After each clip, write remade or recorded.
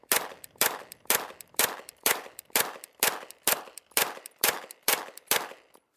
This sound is remade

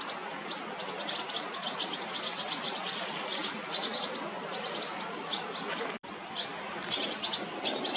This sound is recorded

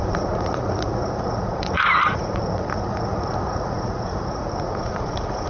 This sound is remade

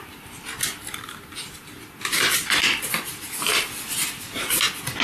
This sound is recorded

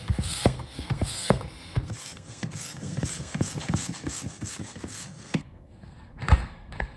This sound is remade